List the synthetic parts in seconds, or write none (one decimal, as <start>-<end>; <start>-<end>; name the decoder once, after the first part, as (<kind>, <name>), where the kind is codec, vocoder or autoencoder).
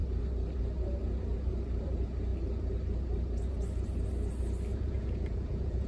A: 4.7-5.9 (vocoder, Vocos)